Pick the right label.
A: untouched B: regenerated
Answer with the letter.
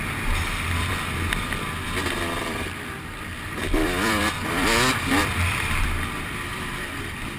B